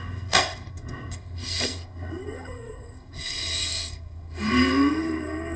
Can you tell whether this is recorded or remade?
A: remade